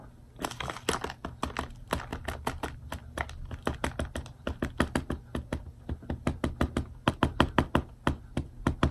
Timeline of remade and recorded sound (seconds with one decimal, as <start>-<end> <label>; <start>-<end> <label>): 0.0-8.9 recorded